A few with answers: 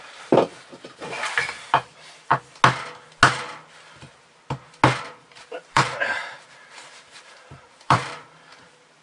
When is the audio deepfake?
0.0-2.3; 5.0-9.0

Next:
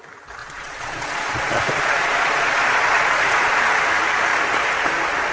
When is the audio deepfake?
0.4-3.6

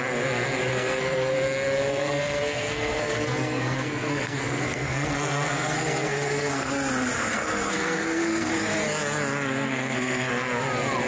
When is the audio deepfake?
0.7-1.3; 1.9-6.7; 7.3-8.5; 9.7-10.3

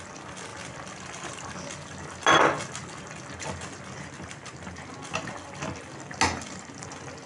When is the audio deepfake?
none

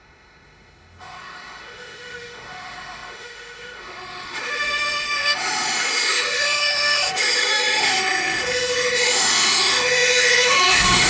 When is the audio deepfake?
0.0-11.1

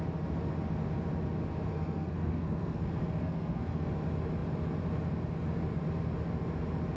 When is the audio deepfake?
1.7-3.9

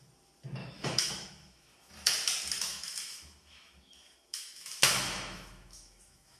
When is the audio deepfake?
0.6-1.9; 2.7-6.4

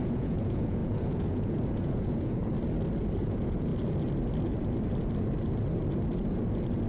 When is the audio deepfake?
0.0-2.4; 3.2-3.7